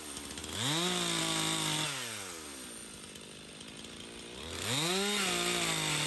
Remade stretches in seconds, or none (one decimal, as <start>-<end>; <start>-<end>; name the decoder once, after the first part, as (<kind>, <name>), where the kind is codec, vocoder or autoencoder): none